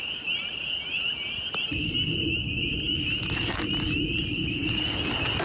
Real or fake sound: real